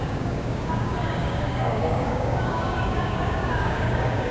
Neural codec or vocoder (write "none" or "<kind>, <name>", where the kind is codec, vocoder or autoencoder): codec, DAC